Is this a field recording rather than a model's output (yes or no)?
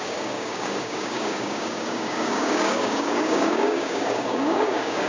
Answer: no